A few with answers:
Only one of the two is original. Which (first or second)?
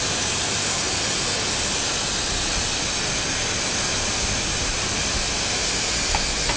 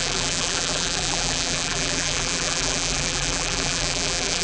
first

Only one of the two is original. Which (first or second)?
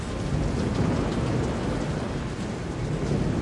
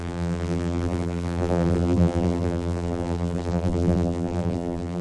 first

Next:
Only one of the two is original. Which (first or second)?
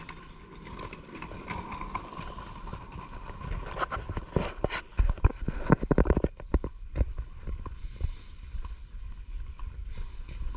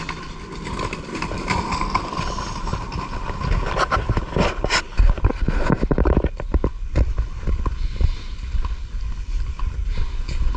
second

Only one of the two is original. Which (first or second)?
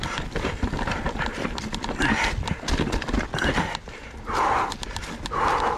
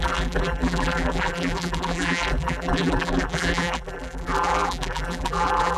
first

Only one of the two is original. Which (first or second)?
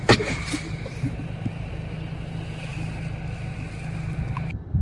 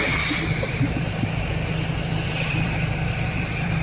first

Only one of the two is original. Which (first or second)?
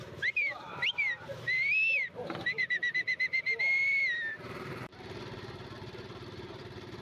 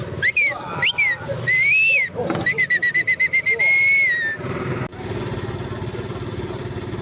second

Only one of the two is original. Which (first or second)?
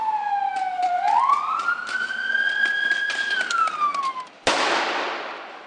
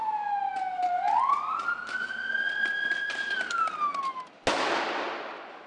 second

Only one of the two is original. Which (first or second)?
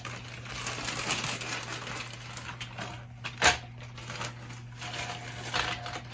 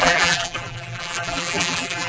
first